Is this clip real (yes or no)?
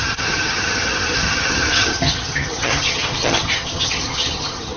no